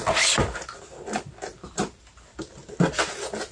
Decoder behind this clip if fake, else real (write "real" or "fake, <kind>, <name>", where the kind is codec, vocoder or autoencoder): real